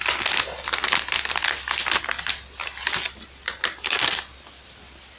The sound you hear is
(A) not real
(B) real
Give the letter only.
B